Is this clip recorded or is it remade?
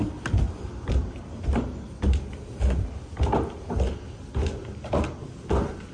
recorded